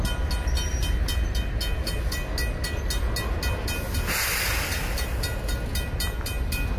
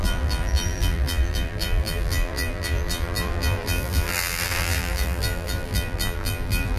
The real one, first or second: first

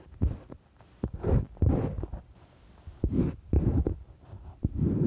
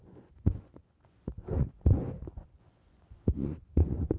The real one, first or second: first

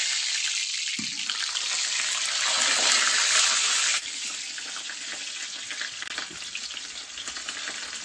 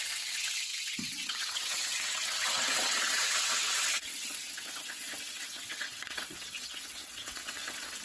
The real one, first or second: first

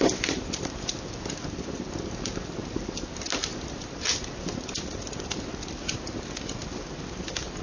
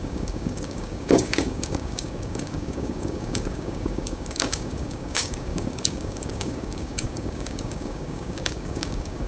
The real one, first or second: first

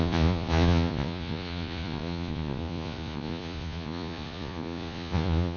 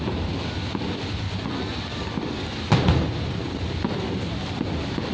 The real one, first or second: second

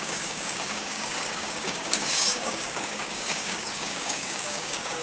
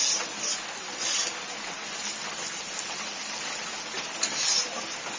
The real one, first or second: second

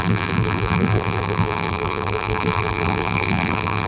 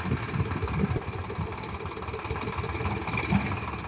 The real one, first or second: second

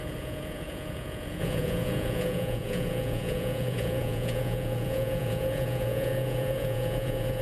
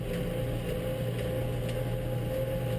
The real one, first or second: second